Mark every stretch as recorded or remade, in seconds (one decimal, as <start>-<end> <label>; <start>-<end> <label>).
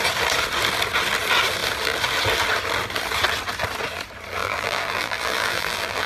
0.0-4.4 recorded; 4.4-6.1 remade